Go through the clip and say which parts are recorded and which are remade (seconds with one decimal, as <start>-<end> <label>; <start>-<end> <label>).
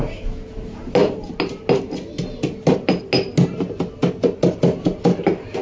0.0-5.6 recorded